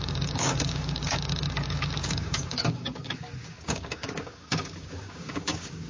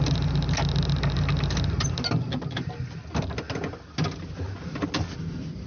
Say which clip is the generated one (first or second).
first